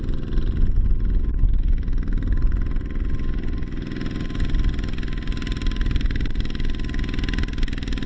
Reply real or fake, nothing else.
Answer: real